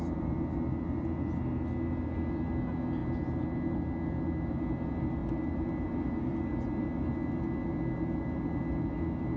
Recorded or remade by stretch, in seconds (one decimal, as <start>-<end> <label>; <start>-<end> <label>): 0.0-9.4 recorded